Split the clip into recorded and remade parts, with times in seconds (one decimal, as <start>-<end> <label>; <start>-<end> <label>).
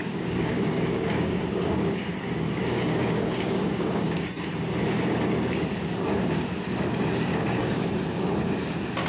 0.0-2.1 remade; 2.1-2.6 recorded; 2.6-4.5 remade; 4.5-7.3 recorded; 7.3-7.9 remade; 7.9-9.1 recorded